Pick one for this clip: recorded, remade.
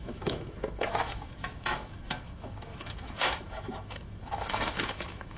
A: remade